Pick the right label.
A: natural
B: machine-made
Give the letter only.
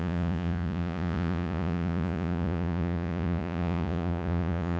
B